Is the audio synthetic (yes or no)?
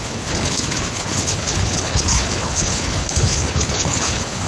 yes